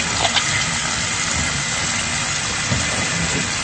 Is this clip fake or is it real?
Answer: real